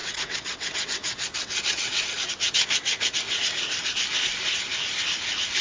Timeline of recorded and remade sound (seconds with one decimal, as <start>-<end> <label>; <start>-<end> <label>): 0.0-2.3 remade; 2.3-5.6 recorded